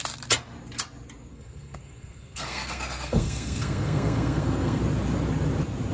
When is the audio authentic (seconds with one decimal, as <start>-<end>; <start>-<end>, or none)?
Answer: 0.0-1.3; 4.8-5.9

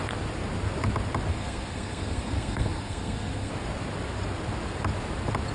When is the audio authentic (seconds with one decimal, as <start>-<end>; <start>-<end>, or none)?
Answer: 0.0-1.3; 3.5-5.5

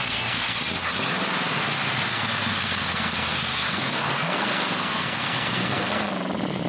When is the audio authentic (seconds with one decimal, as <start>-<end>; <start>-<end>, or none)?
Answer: 0.6-2.1; 6.1-6.7

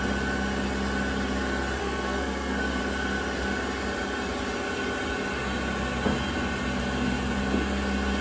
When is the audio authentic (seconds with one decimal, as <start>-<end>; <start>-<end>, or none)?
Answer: 0.0-1.8; 2.8-8.2

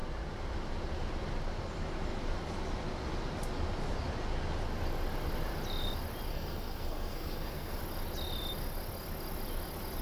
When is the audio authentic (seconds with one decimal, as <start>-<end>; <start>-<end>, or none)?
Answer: 0.0-6.3; 7.8-10.0

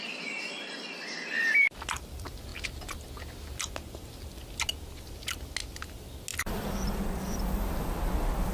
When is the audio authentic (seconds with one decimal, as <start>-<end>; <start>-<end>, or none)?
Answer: 0.0-8.5

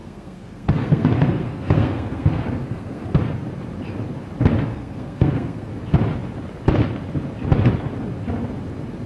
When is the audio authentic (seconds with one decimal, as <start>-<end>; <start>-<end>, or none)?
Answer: 3.2-4.7; 5.7-9.1

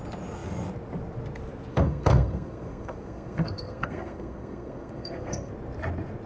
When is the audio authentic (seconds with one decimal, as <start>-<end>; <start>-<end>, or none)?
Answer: 0.0-1.7; 5.5-6.3